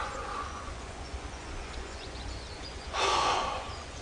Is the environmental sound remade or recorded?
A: remade